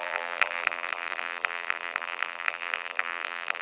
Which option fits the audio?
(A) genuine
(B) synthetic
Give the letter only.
B